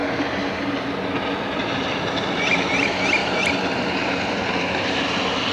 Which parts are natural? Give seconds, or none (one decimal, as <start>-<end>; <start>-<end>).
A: none